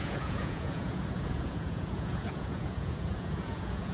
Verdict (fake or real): fake